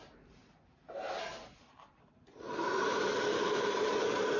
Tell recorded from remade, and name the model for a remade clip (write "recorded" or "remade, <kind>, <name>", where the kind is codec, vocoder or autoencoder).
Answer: remade, vocoder, BigVGAN v2